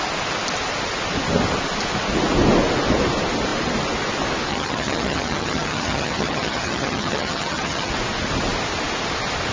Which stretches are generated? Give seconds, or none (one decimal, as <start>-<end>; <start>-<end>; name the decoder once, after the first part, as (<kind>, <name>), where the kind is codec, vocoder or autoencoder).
4.5-7.9 (vocoder, HiFi-GAN)